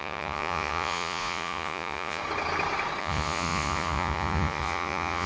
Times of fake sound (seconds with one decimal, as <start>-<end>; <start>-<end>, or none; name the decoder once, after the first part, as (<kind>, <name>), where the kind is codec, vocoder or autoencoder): 0.0-2.2 (vocoder, Vocos); 3.0-5.3